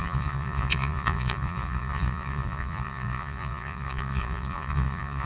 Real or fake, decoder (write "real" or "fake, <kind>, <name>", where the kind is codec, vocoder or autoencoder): fake, vocoder, Vocos